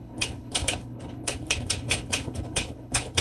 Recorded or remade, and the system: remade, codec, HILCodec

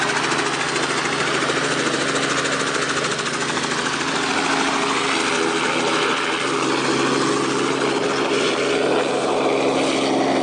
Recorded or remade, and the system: recorded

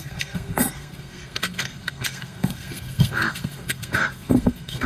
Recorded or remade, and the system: remade, codec, SNAC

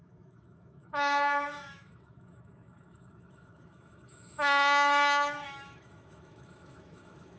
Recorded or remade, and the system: remade, autoencoder, DAC-VAE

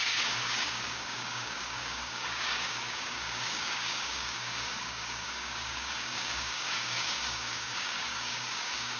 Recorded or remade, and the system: remade, codec, DAC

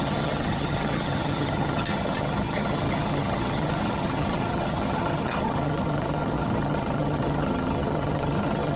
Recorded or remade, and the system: remade, vocoder, HiFi-GAN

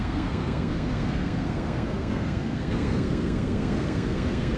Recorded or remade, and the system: remade, codec, SNAC